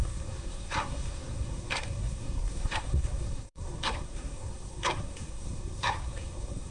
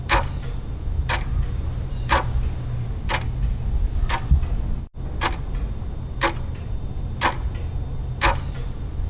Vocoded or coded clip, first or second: first